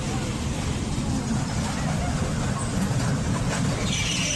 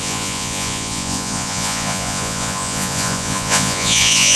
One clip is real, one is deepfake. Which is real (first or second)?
first